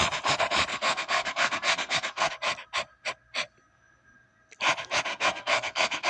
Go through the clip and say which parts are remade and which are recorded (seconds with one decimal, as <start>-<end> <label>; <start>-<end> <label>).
0.0-0.7 recorded; 0.7-2.3 remade; 2.3-5.1 recorded; 5.1-6.1 remade